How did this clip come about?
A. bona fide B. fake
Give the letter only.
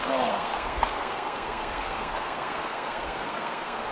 B